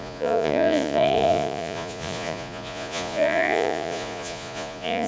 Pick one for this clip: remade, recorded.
remade